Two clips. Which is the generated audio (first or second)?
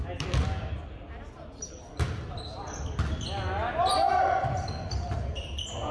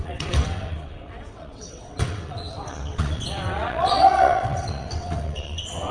second